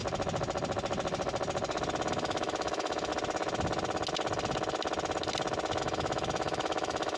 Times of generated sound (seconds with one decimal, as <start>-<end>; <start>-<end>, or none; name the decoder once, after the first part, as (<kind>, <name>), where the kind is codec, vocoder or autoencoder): 2.1-3.1 (autoencoder, DAC-VAE); 5.8-7.2

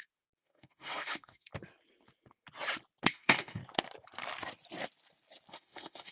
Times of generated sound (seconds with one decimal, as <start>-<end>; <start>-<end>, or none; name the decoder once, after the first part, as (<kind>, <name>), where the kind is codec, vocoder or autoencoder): 0.0-1.5 (autoencoder, DAC-VAE); 3.1-3.6; 5.5-6.1

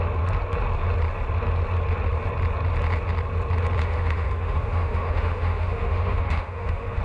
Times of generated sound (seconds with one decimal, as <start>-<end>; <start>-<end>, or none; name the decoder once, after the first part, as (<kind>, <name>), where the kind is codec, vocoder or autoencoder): 3.8-7.0 (autoencoder, DAC-VAE)

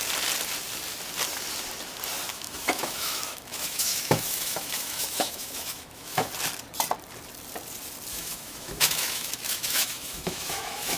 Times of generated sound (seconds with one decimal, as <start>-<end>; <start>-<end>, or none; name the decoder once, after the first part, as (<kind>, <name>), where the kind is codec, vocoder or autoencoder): 2.3-6.3 (autoencoder, DAC-VAE); 8.1-11.0

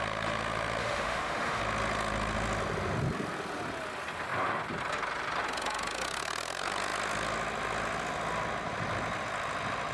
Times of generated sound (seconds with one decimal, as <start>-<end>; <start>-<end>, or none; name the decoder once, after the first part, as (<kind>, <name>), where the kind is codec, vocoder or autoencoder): 0.8-1.6 (autoencoder, DAC-VAE)

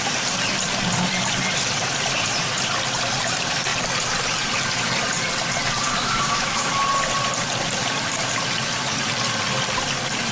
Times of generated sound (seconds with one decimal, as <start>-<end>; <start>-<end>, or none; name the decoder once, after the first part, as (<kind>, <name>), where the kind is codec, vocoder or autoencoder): 6.0-6.7 (autoencoder, DAC-VAE)